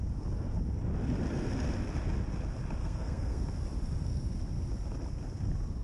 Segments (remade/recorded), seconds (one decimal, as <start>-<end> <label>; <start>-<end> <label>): 0.0-2.8 recorded; 2.8-3.4 remade; 3.4-5.8 recorded